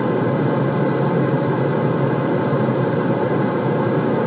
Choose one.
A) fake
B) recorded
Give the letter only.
B